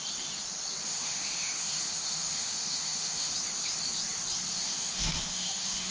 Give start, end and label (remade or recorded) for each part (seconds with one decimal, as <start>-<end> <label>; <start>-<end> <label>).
0.0-0.8 recorded; 0.8-3.3 remade; 3.3-4.5 recorded; 4.5-5.9 remade